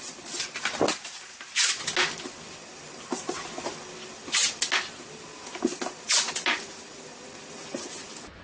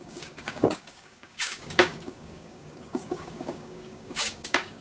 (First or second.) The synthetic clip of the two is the second